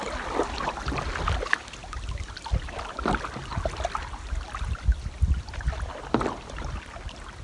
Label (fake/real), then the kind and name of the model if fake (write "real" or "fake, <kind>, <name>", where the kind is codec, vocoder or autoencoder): real